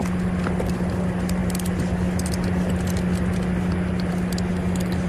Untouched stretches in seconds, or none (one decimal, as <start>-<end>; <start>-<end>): 0.0-5.1